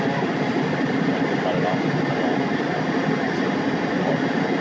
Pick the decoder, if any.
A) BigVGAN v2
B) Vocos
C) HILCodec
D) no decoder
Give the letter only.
D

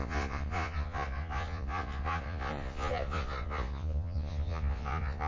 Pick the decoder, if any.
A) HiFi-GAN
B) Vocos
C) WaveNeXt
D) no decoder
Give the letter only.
B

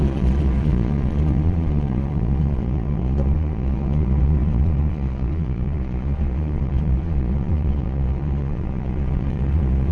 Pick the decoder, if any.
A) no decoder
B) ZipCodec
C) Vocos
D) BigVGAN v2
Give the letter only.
C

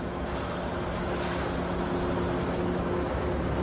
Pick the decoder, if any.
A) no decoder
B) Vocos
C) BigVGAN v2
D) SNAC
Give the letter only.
A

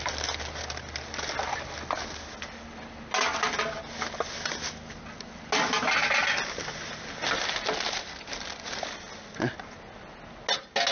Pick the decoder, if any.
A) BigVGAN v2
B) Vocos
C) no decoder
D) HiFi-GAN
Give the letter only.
C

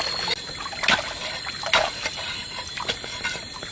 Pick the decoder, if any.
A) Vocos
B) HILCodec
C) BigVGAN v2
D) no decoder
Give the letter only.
D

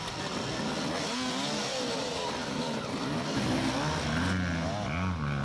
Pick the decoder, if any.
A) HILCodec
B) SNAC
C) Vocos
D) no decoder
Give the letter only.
D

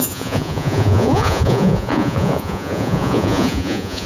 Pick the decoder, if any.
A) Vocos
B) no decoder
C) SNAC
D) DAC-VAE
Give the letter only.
A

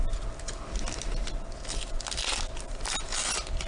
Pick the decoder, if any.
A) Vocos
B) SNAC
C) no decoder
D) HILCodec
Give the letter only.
C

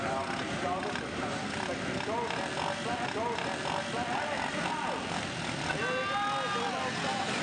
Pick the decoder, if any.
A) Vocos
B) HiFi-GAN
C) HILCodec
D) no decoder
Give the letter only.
D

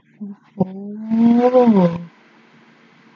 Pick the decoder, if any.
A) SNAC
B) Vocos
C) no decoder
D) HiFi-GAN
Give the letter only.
C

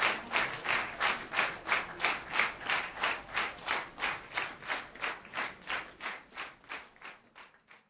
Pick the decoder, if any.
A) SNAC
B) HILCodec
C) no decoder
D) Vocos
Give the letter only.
C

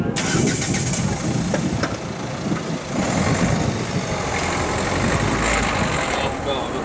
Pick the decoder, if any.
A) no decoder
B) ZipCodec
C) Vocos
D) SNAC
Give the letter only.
A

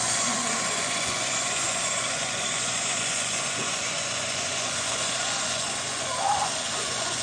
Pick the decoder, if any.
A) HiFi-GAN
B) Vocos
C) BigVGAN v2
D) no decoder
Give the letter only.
B